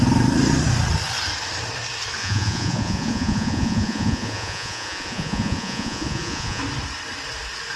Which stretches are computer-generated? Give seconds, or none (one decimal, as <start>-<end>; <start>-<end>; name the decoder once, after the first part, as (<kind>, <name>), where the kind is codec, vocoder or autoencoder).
2.2-6.6 (vocoder, Vocos)